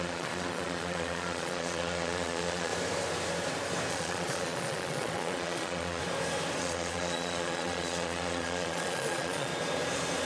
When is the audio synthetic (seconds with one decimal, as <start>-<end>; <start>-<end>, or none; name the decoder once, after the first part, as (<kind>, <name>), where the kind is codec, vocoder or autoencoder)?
0.0-2.7 (vocoder, Vocos); 3.9-6.0; 6.6-9.5